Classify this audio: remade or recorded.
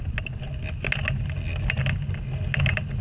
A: recorded